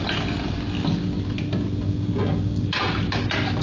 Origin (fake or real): real